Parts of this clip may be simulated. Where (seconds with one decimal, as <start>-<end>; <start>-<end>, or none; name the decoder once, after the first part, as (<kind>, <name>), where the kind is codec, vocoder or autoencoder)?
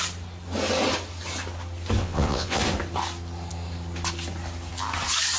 2.0-2.6 (vocoder, WaveNeXt)